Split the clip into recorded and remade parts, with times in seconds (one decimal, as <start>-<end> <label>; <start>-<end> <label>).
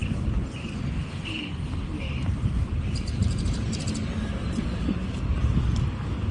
0.0-3.8 remade; 3.8-6.3 recorded